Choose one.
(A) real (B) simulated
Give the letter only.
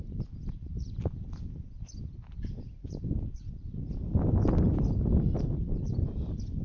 A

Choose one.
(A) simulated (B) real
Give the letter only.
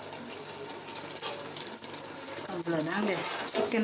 B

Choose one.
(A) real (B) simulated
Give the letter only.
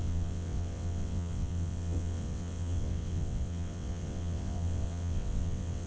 B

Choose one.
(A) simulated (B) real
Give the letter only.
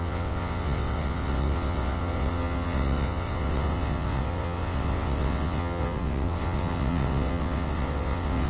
A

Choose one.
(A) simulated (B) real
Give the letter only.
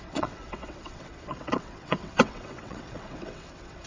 A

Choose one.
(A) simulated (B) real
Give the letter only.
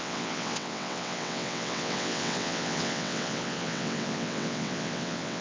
A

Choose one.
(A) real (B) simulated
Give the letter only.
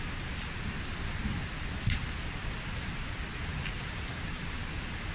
A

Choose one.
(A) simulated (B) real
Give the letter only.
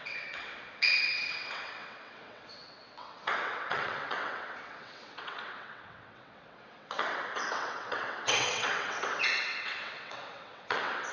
A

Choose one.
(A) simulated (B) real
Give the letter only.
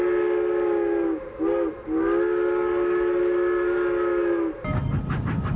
B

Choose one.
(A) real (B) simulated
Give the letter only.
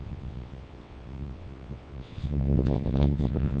B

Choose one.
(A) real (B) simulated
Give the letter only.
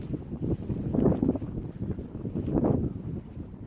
A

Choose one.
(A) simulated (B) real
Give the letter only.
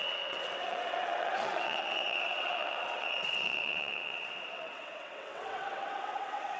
A